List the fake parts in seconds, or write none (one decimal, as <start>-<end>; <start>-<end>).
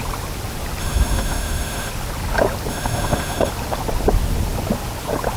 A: 0.8-1.9; 2.7-3.5